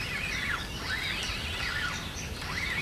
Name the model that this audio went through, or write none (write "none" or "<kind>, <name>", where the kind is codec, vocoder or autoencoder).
none